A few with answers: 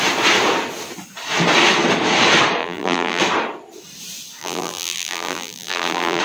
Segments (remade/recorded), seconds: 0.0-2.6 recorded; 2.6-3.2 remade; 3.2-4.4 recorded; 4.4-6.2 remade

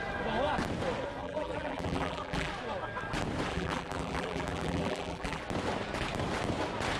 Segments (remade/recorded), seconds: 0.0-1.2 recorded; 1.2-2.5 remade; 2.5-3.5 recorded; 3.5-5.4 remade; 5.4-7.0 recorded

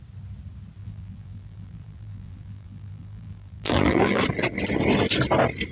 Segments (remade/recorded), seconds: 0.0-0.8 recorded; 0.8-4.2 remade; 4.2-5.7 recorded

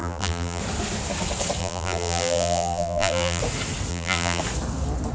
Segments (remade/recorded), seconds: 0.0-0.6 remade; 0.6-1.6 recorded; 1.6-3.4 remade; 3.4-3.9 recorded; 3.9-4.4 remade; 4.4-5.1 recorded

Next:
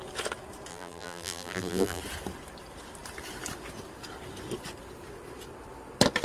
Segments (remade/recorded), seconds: 0.0-0.7 recorded; 0.7-2.0 remade; 2.0-6.2 recorded

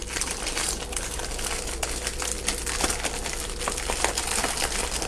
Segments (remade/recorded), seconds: 0.0-1.2 remade; 1.2-5.1 recorded